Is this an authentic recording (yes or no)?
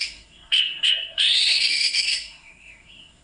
no